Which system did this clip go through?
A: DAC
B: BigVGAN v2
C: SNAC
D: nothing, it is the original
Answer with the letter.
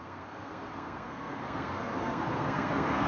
C